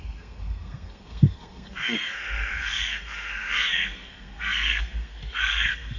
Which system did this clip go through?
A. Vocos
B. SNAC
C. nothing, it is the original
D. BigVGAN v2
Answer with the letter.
B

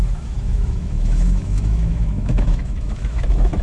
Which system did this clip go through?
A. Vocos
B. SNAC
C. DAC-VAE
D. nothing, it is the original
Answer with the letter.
C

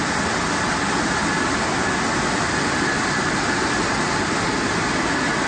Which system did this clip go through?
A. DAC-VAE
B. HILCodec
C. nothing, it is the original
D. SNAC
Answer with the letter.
C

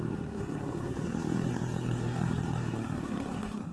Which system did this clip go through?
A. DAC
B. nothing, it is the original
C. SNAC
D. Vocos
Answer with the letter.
C